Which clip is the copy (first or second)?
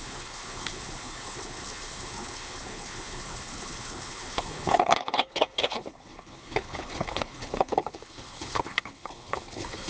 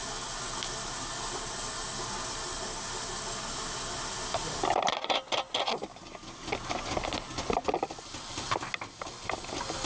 first